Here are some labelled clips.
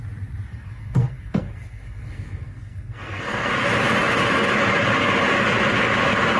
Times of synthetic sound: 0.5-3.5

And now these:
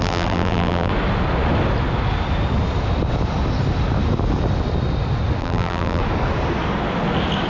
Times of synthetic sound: 0.0-0.9; 5.4-6.0

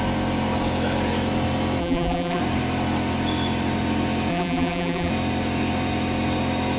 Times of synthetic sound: 1.8-2.4; 4.3-5.1

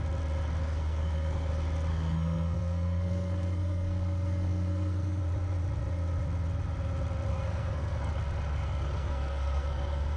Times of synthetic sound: 0.6-1.5; 1.9-5.2; 7.3-8.1; 8.5-10.2

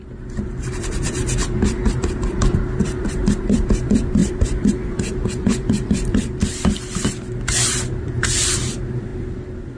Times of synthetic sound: 0.0-9.1

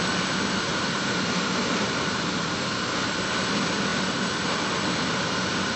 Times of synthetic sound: 0.7-2.2

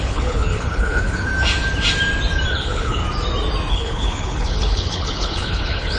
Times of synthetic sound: 0.0-1.3; 2.5-3.0; 3.7-6.0